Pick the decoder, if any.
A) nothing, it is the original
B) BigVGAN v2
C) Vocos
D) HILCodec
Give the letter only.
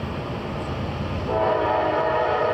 B